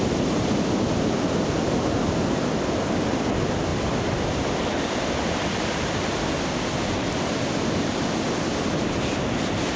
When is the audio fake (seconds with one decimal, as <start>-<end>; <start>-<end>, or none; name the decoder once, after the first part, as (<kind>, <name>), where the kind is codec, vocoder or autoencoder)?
none